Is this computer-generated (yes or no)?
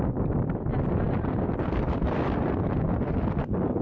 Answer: no